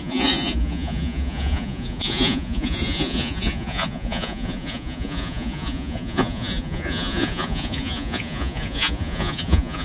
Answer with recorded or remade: remade